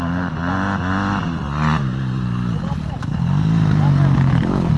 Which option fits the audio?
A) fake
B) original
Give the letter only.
B